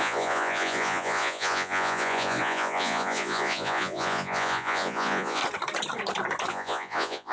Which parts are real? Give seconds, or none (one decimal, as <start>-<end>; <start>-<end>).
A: 5.4-6.5